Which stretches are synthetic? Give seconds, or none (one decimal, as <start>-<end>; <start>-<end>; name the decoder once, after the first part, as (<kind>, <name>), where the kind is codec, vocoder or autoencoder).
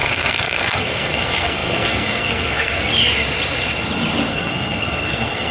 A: 0.0-2.9 (codec, SNAC); 4.3-5.5